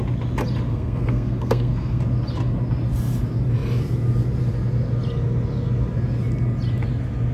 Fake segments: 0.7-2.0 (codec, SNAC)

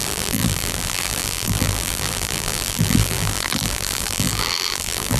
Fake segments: 0.0-5.2 (vocoder, BigVGAN v2)

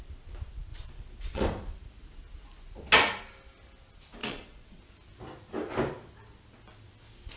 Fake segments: 0.7-1.4 (vocoder, Vocos); 4.2-4.8

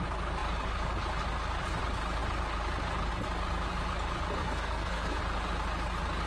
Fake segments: 4.4-5.2 (codec, SNAC)

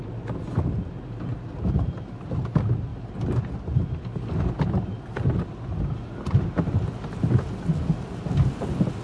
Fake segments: none

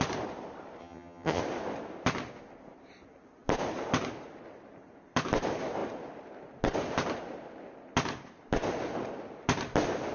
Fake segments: 0.8-1.4 (vocoder, HiFi-GAN)

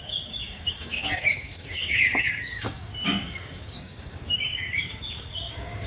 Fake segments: 0.0-5.9 (codec, DAC)